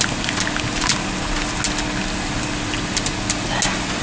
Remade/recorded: recorded